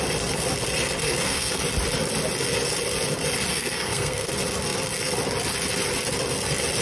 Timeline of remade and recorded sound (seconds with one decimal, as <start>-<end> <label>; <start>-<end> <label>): 0.0-1.0 recorded; 1.0-1.6 remade; 1.6-3.5 recorded; 3.5-4.3 remade; 4.3-6.8 recorded